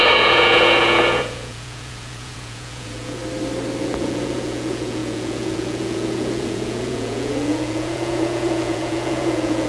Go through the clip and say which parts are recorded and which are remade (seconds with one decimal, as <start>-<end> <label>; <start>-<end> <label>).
0.0-3.2 remade; 3.2-3.8 recorded; 3.8-9.7 remade